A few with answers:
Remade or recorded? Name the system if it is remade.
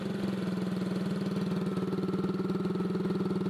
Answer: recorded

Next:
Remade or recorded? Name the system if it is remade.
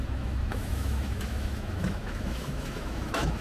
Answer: remade, autoencoder, DAC-VAE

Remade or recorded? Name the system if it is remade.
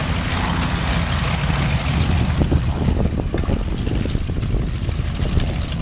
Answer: recorded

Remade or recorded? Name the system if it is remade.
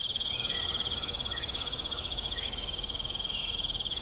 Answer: remade, autoencoder, DAC-VAE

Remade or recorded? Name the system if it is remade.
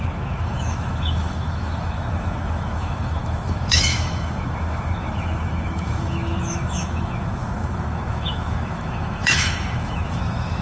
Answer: remade, autoencoder, DAC-VAE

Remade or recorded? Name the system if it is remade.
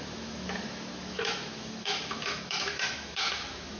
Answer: remade, autoencoder, DAC-VAE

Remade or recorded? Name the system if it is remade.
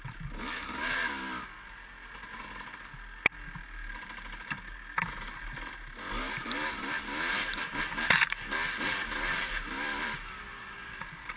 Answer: recorded